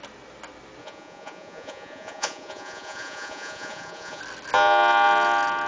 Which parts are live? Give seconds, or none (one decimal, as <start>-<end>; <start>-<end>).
0.0-0.8; 4.2-5.7